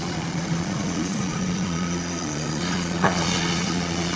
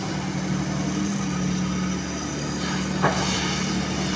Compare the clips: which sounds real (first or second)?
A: second